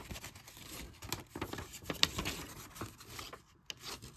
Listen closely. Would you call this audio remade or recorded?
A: recorded